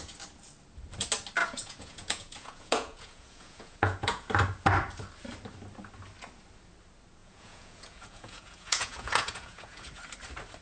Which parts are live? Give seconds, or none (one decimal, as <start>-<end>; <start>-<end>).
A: 0.0-1.4; 4.3-7.2; 10.0-10.6